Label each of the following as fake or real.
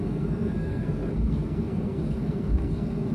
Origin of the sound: fake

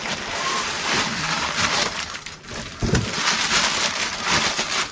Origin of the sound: real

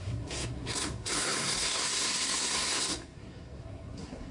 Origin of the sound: fake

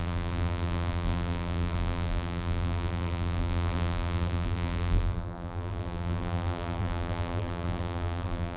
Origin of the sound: fake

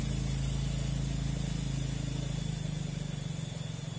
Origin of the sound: real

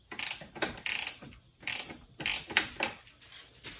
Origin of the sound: real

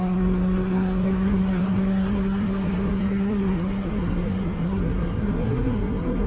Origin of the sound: fake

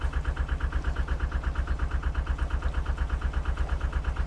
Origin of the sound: real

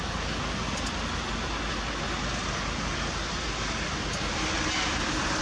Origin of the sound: real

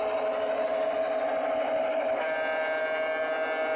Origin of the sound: real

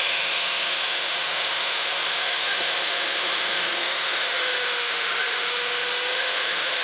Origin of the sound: fake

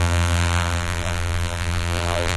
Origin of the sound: fake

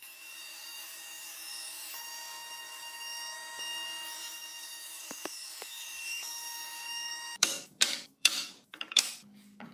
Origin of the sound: fake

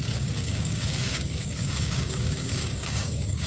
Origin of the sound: fake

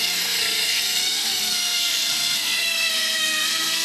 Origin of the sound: fake